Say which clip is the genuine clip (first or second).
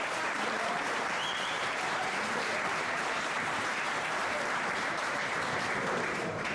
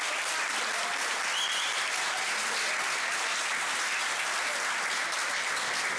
second